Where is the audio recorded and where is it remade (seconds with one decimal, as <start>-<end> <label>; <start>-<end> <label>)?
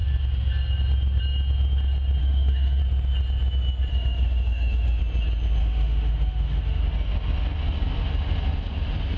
0.0-2.2 recorded; 2.2-2.8 remade; 2.8-3.9 recorded; 3.9-5.0 remade; 5.0-5.6 recorded; 5.6-6.8 remade; 6.8-9.2 recorded